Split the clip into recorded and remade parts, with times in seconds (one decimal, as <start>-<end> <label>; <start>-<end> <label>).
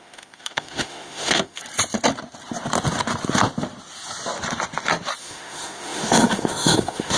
0.0-1.6 remade; 1.6-5.2 recorded; 5.2-7.2 remade